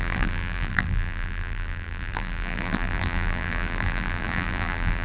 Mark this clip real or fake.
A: fake